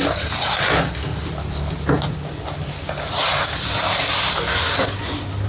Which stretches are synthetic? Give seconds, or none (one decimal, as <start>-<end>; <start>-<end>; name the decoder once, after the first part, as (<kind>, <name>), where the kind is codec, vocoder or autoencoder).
1.1-4.4 (vocoder, BigVGAN v2)